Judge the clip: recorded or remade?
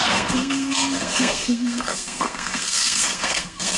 remade